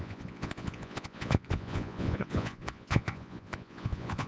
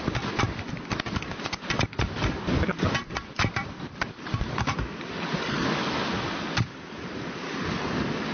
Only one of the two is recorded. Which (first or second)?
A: second